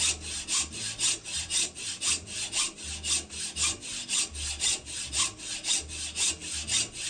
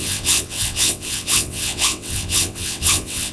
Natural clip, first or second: first